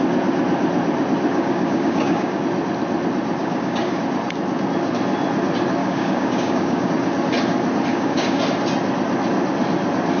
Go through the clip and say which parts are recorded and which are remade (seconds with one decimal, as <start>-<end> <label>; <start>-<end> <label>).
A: 0.0-1.3 recorded; 1.3-2.4 remade; 2.4-3.4 recorded; 3.4-4.0 remade; 4.0-5.8 recorded; 5.8-6.9 remade; 6.9-7.9 recorded; 7.9-8.4 remade; 8.4-10.2 recorded